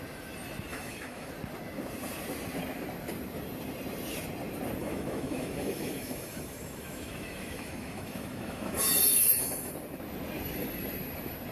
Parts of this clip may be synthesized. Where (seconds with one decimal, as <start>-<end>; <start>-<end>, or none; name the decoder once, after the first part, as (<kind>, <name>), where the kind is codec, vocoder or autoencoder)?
0.7-1.3 (autoencoder, DAC-VAE); 4.8-9.7